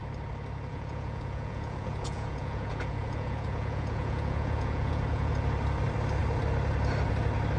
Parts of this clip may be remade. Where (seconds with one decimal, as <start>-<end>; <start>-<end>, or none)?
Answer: 0.7-5.3